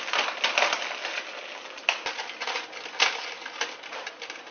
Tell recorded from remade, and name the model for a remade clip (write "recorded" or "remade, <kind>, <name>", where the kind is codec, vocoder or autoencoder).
recorded